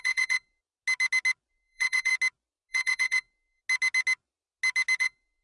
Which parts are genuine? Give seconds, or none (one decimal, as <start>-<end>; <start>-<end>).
0.6-1.5; 2.1-2.7; 3.6-5.0